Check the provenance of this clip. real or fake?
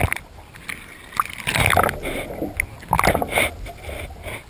real